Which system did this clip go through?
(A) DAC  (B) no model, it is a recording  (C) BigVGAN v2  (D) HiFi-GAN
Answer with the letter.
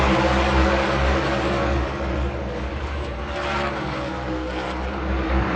A